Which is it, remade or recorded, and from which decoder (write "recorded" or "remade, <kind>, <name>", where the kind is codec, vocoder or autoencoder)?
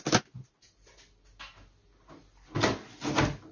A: recorded